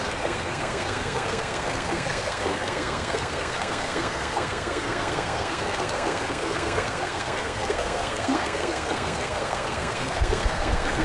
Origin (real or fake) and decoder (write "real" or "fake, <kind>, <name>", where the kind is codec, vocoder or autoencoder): fake, codec, SNAC